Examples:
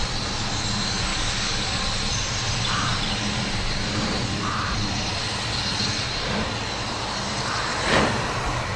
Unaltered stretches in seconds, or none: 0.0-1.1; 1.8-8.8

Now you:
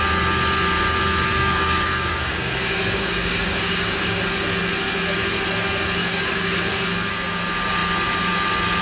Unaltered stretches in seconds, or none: 0.0-1.3; 4.2-6.0; 6.6-8.8

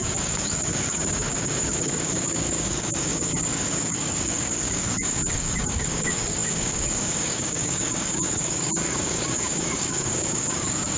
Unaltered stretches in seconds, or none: none

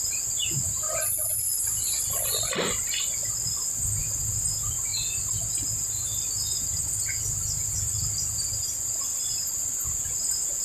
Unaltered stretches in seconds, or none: 0.0-10.6

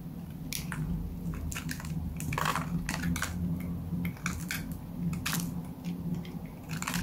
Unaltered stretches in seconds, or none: 0.0-7.0

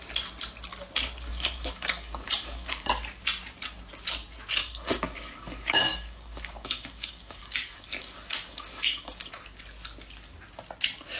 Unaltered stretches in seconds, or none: 0.0-1.3; 2.9-4.6; 9.3-11.2